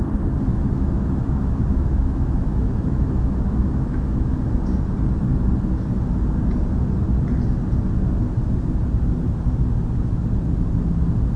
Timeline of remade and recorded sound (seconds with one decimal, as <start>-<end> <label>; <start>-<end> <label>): 0.0-0.5 recorded; 0.5-4.5 remade; 4.5-11.4 recorded

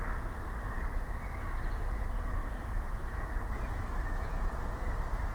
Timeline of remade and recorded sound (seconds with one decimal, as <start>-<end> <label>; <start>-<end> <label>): 0.0-2.4 recorded; 2.4-4.5 remade; 4.5-5.3 recorded

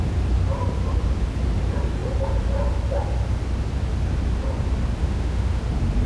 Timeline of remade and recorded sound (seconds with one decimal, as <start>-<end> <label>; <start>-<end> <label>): 0.0-5.0 recorded; 5.0-5.6 remade; 5.6-6.1 recorded

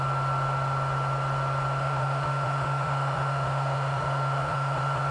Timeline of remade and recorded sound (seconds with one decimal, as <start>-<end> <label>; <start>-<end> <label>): 0.0-1.8 recorded; 1.8-5.1 remade

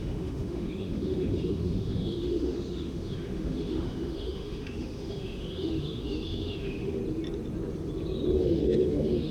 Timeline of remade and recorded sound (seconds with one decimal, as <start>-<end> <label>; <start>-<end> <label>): 0.0-7.0 remade; 7.0-8.4 recorded; 8.4-9.3 remade

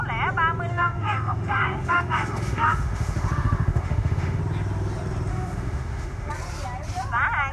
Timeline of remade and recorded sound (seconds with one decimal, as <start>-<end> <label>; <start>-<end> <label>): 0.0-0.7 recorded; 0.7-4.4 remade; 4.4-5.3 recorded; 5.3-6.3 remade; 6.3-7.5 recorded